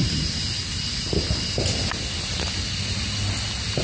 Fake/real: real